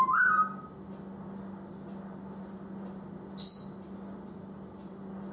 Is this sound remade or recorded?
recorded